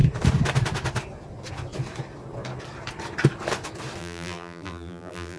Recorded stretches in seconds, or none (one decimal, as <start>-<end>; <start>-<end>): 0.0-4.0